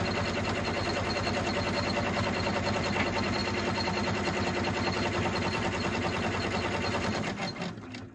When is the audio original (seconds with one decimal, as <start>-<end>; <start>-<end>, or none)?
0.0-8.1